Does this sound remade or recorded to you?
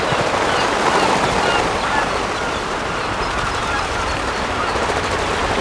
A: recorded